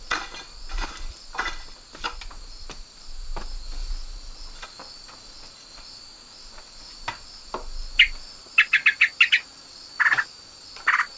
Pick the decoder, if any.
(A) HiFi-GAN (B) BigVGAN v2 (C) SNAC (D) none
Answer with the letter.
D